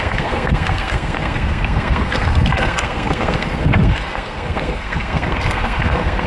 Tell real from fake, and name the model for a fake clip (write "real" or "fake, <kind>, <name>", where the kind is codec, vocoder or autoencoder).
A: fake, codec, SNAC